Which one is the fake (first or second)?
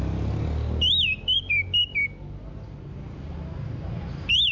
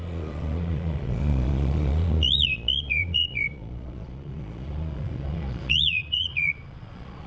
second